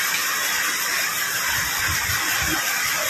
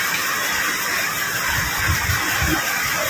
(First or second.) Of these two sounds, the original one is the second